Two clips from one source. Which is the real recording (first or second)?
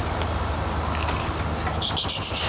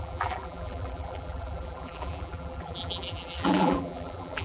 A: first